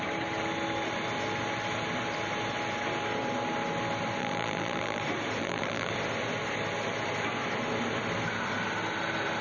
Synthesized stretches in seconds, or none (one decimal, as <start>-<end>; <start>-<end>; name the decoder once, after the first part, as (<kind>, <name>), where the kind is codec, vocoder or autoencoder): 4.2-5.0 (vocoder, BigVGAN v2); 5.4-5.9